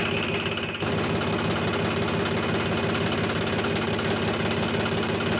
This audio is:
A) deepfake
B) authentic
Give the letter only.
B